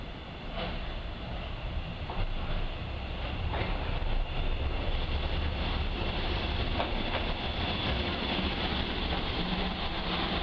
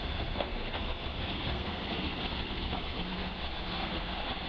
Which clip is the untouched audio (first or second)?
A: first